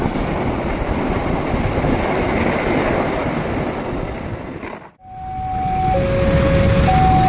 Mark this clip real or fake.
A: real